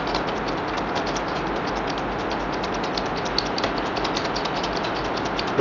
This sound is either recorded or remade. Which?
recorded